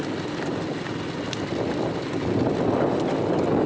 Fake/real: real